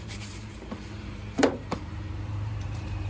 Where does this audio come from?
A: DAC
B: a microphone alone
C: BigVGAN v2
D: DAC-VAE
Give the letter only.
C